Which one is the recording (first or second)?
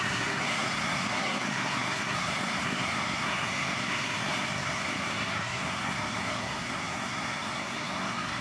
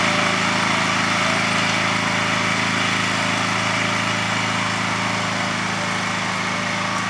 second